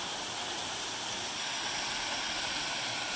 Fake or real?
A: real